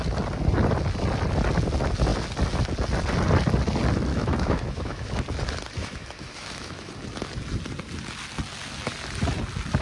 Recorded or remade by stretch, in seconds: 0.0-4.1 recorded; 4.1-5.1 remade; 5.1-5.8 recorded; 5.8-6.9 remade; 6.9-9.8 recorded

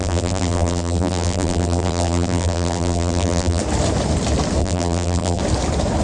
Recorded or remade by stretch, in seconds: 0.0-3.6 remade; 3.6-4.6 recorded; 4.6-5.4 remade; 5.4-6.0 recorded

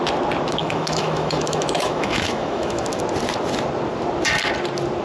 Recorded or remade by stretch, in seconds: 0.0-0.6 recorded; 0.6-3.0 remade; 3.0-5.0 recorded

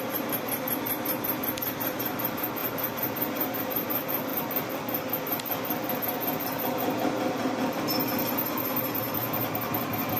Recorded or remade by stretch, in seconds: 0.0-10.2 recorded

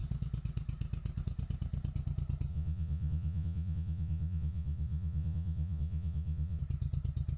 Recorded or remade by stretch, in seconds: 0.0-2.5 recorded; 2.5-6.6 remade; 6.6-7.4 recorded

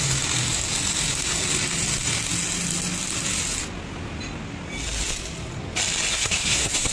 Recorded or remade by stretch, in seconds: 0.0-6.1 recorded; 6.1-6.9 remade

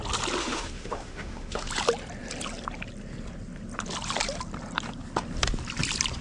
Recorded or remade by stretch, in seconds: 0.0-0.4 recorded; 0.4-1.7 remade; 1.7-6.2 recorded

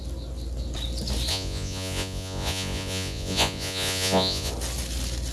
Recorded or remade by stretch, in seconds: 0.0-1.3 recorded; 1.3-4.5 remade; 4.5-5.3 recorded